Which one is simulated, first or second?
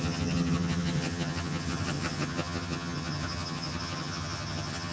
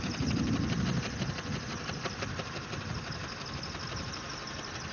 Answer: first